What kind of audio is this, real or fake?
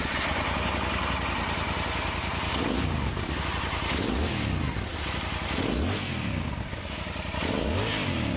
real